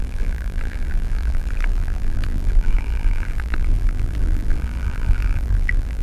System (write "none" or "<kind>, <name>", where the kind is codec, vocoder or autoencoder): vocoder, BigVGAN v2